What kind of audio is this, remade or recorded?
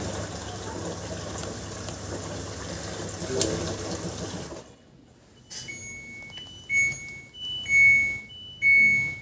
recorded